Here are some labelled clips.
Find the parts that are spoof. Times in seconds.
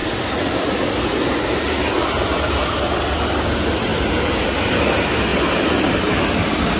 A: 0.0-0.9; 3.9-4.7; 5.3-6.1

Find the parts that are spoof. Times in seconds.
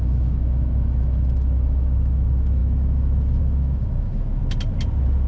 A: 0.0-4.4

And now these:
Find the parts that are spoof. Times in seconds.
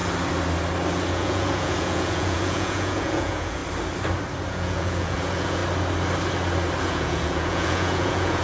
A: 1.1-3.6; 4.5-5.6; 6.8-8.4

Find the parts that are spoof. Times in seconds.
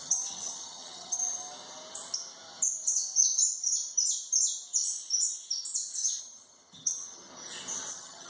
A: 0.0-1.2; 6.2-7.3; 7.9-8.3